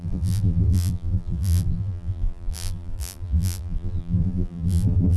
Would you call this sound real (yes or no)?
no